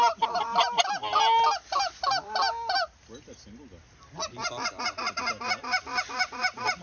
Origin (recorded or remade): recorded